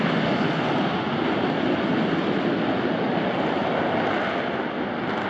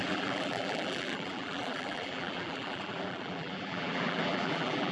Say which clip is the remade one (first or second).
second